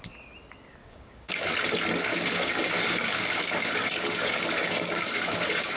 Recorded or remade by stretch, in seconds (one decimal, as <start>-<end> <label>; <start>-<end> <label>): 0.0-0.8 recorded; 0.8-1.5 remade; 1.5-2.1 recorded; 2.1-5.8 remade